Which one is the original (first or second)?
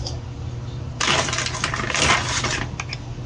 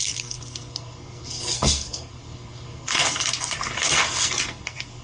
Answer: first